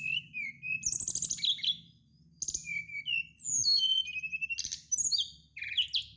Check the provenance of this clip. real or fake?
real